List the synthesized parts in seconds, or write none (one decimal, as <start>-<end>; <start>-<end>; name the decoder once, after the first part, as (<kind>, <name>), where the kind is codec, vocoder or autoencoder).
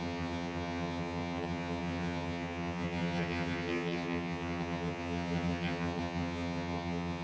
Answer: 0.0-7.2 (vocoder, HiFi-GAN)